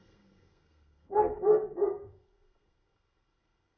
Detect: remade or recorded remade